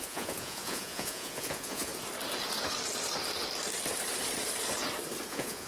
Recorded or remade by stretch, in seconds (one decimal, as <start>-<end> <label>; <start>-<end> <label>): 0.0-1.9 remade; 1.9-5.3 recorded; 5.3-5.7 remade